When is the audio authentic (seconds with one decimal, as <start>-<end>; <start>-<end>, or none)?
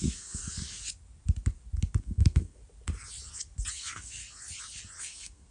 0.4-2.0; 2.6-3.7; 4.2-5.0